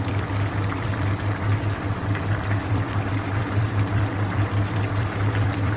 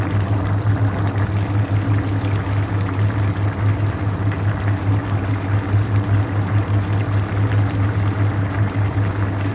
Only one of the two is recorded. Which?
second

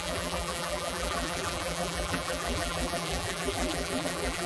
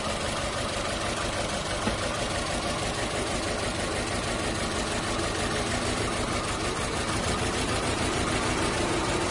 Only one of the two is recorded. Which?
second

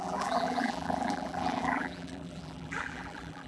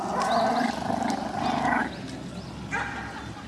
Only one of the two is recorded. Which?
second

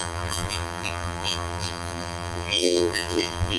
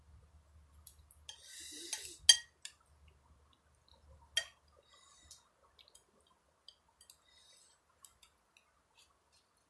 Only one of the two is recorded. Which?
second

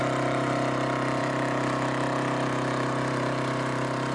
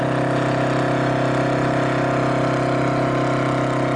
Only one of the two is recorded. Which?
second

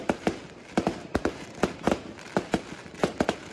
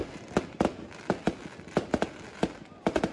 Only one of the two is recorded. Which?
second